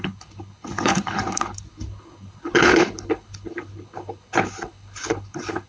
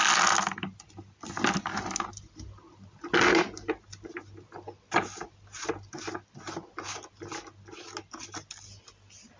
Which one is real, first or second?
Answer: second